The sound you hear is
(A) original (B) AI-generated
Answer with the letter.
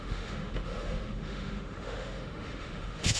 B